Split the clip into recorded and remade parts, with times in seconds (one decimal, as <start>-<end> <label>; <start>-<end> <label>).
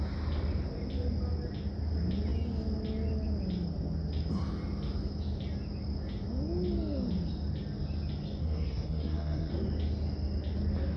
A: 0.0-8.4 recorded; 8.4-9.5 remade; 9.5-11.0 recorded